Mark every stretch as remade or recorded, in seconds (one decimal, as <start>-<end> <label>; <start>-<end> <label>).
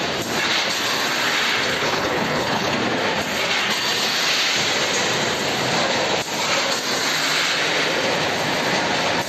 0.0-1.7 recorded; 1.7-2.7 remade; 2.7-9.3 recorded